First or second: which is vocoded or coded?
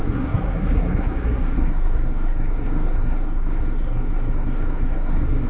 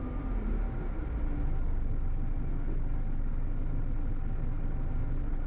first